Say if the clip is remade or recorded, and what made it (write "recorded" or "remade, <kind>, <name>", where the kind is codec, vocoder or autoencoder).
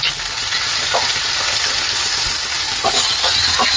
recorded